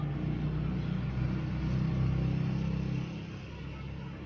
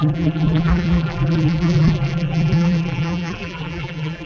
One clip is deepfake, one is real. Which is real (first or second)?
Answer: first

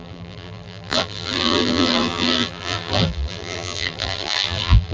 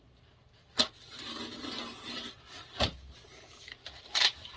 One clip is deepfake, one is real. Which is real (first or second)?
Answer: second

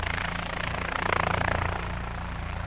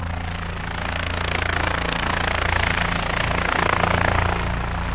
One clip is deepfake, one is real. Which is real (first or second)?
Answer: second